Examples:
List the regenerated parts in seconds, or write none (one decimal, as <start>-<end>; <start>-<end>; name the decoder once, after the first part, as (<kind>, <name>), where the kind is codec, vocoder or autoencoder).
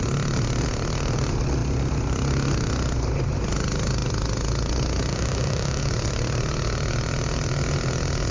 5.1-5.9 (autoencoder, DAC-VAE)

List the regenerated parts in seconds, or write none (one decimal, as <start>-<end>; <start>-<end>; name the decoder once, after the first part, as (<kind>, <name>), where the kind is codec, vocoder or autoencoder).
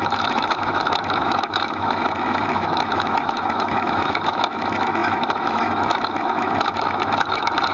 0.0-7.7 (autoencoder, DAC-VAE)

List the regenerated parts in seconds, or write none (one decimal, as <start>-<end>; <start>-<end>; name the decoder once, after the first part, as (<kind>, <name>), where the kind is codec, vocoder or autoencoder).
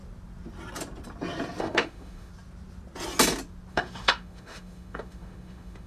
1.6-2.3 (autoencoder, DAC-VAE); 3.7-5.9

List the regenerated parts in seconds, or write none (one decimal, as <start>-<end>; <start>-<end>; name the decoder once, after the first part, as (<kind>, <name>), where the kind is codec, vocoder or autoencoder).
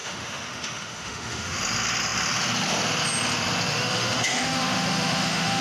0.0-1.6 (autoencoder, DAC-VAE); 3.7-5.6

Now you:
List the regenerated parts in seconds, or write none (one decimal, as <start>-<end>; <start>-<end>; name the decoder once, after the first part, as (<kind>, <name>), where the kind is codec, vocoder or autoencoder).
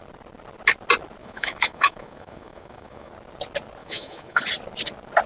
1.2-3.1 (autoencoder, DAC-VAE); 3.8-4.4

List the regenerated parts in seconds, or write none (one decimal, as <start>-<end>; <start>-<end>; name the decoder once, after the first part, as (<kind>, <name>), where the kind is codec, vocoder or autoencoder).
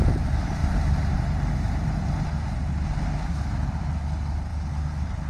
none